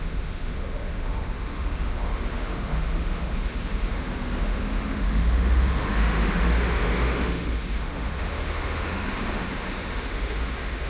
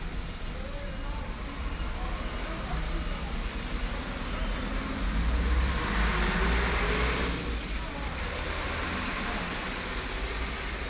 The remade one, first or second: first